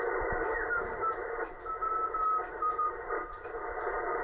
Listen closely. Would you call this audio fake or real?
fake